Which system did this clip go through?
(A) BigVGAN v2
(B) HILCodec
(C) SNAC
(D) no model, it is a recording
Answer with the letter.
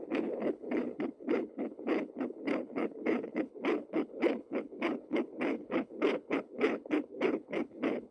B